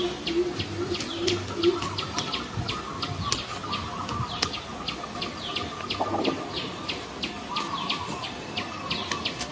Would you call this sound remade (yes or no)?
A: no